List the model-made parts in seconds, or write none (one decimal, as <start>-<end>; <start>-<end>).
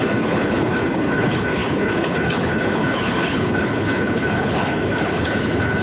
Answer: 0.0-5.8